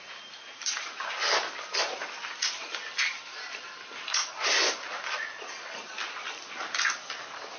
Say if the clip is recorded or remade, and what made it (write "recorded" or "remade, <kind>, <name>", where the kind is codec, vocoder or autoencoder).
recorded